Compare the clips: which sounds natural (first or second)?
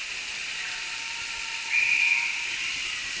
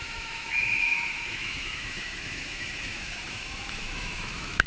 first